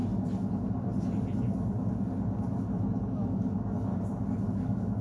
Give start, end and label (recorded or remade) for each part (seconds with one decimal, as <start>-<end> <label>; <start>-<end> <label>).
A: 0.0-3.0 recorded; 3.0-3.9 remade; 3.9-4.5 recorded; 4.5-5.0 remade